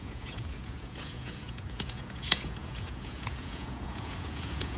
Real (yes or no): no